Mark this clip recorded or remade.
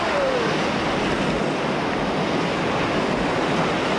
recorded